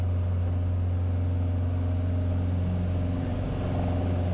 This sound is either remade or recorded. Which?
recorded